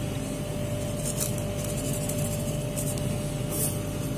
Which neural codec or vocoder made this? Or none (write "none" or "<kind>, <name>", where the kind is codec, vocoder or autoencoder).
none